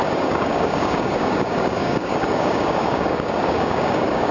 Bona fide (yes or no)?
no